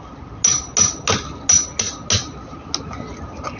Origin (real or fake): real